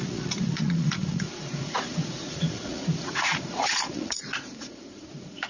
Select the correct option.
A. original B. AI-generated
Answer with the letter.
B